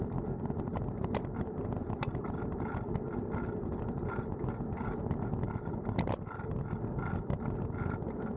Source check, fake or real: real